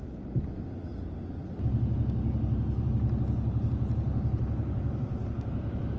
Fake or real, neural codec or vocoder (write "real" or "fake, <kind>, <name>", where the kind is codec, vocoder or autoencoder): real